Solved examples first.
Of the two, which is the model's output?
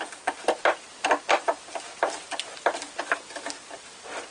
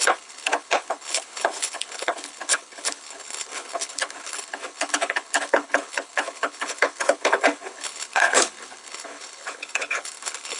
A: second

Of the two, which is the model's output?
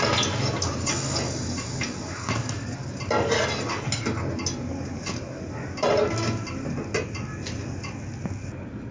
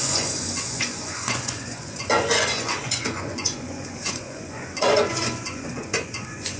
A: second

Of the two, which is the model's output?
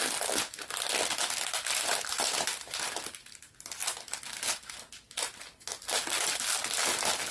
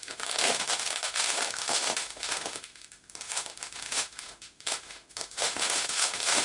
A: second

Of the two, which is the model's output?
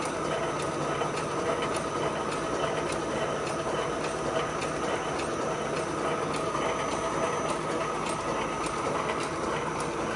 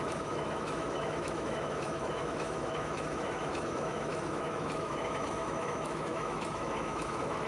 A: second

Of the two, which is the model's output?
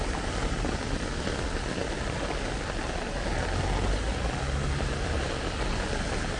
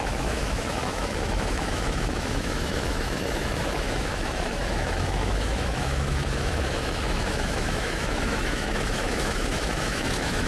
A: second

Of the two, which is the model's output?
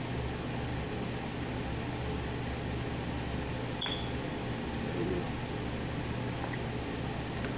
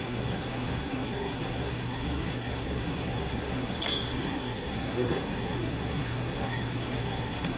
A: second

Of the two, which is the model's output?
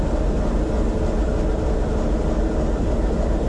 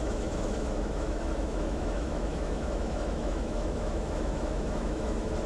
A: second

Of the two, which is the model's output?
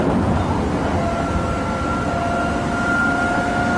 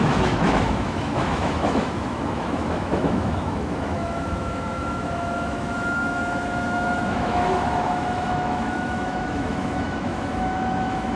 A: second